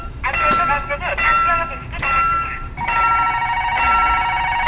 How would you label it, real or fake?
real